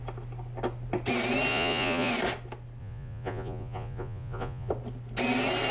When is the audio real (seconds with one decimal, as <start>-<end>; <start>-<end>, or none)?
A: 0.0-1.5; 2.1-2.8; 4.7-5.7